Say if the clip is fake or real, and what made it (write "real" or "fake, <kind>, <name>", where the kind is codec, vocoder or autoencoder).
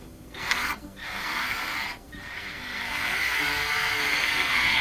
fake, codec, SNAC